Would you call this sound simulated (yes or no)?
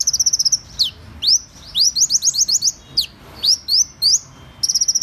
no